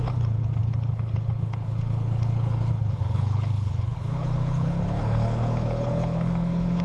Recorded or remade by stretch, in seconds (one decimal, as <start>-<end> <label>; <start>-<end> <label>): 0.0-6.8 remade